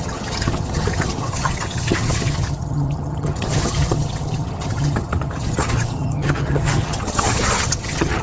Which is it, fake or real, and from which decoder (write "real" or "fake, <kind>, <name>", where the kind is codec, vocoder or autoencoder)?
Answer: fake, vocoder, HiFi-GAN